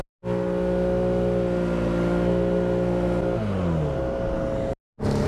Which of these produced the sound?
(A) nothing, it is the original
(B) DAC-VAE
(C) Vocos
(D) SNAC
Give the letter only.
A